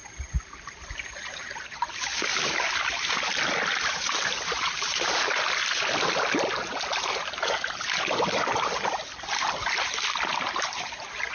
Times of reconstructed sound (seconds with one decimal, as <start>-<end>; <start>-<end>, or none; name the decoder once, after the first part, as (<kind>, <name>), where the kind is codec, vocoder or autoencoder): none